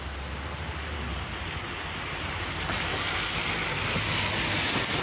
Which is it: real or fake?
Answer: real